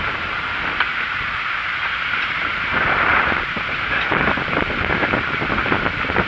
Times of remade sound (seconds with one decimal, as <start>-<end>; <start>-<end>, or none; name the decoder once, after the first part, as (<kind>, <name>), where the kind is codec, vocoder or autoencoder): 0.9-4.7 (vocoder, BigVGAN v2)